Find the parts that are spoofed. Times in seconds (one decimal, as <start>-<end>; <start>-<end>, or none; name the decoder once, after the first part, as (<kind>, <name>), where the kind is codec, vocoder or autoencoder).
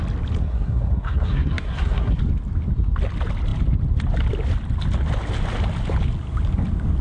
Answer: 0.4-2.2 (codec, SNAC)